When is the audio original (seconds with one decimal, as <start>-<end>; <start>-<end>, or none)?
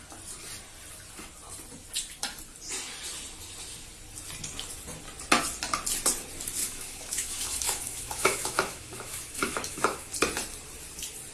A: 0.0-6.6; 10.1-11.3